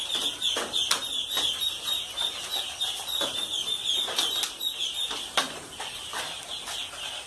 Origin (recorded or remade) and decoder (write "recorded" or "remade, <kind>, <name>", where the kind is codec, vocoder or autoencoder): recorded